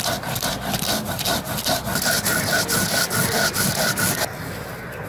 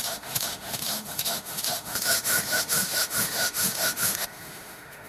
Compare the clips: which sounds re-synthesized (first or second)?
second